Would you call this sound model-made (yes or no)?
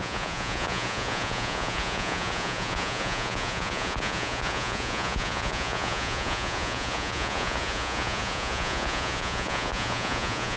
yes